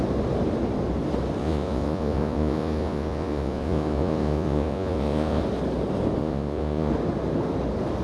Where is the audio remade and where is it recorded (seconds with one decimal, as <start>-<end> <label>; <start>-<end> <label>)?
0.0-1.4 recorded; 1.4-5.4 remade; 5.4-6.2 recorded; 6.2-6.9 remade; 6.9-8.0 recorded